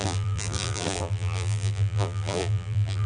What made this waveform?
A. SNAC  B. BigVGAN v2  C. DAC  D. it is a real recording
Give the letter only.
B